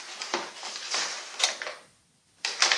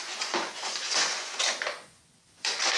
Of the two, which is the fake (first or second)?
second